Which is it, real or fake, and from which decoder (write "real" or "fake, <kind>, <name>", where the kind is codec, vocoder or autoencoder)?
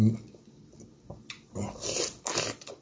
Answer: real